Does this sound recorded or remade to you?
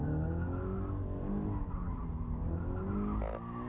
recorded